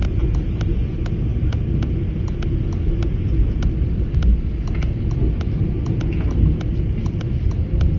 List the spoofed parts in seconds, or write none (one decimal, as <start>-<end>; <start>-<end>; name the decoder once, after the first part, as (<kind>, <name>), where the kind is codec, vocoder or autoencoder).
0.0-0.5 (vocoder, Vocos)